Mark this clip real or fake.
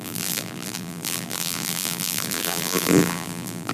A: fake